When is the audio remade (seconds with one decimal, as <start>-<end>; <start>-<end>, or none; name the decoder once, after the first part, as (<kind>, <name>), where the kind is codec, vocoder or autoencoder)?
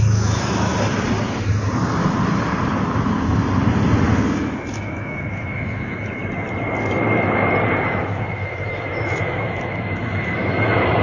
0.0-0.7 (autoencoder, DAC-VAE); 4.7-6.2; 8.0-11.0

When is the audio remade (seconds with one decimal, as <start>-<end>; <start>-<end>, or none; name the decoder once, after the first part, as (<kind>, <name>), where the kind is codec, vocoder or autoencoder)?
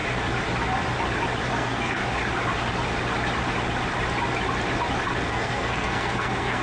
1.5-2.0 (codec, SNAC); 5.3-6.6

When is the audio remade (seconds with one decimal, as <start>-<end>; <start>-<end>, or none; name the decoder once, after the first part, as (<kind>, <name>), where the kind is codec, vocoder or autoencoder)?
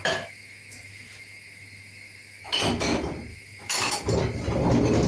0.0-2.7 (autoencoder, DAC-VAE); 3.3-3.9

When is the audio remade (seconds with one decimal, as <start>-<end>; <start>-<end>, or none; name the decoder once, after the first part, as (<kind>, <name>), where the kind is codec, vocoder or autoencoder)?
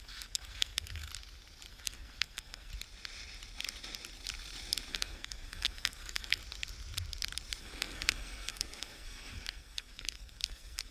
0.0-1.1 (codec, SNAC); 1.7-2.7; 4.9-6.4; 7.6-10.9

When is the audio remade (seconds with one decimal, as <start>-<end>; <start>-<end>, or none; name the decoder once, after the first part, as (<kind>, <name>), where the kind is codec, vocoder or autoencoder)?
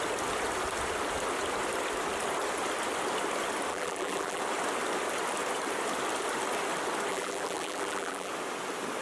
3.7-4.4 (vocoder, BigVGAN v2); 7.1-8.3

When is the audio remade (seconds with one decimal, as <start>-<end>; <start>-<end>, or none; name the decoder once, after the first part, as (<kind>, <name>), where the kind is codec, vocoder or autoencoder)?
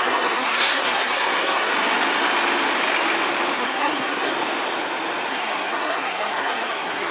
0.0-1.7 (codec, SNAC); 3.6-4.3; 5.3-7.1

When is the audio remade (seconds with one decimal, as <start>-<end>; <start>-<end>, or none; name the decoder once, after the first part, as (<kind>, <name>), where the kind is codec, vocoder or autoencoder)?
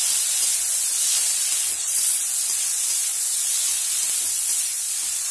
1.6-2.2 (vocoder, Vocos)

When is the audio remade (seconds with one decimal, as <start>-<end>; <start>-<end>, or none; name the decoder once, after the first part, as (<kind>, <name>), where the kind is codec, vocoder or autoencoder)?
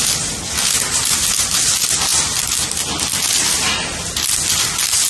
none